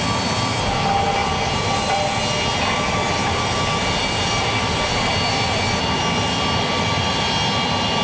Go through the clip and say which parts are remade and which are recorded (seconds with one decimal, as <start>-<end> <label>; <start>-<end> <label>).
0.0-8.0 recorded